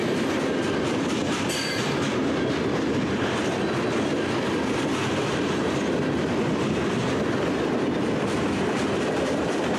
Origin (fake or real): fake